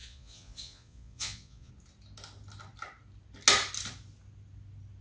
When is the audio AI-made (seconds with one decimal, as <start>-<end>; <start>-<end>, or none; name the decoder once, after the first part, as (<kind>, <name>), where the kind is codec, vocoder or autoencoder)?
0.0-1.7 (vocoder, Vocos)